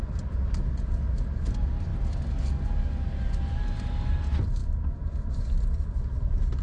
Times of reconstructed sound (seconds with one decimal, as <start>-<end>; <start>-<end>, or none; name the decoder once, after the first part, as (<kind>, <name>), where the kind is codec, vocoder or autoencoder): 4.6-6.6 (vocoder, BigVGAN v2)